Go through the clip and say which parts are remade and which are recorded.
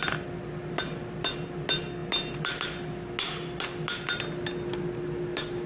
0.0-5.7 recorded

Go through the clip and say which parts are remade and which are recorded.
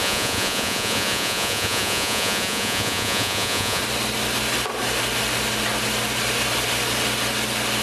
0.0-3.8 remade; 3.8-7.8 recorded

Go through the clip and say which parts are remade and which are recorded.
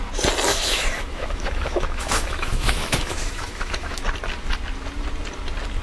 0.0-0.5 recorded; 0.5-4.0 remade; 4.0-5.8 recorded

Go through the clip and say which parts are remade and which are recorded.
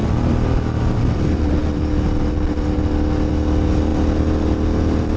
0.0-5.2 recorded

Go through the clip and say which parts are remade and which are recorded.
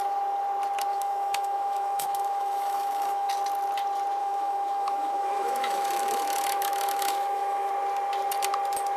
0.0-0.9 recorded; 0.9-3.3 remade; 3.3-4.2 recorded; 4.2-7.7 remade; 7.7-9.0 recorded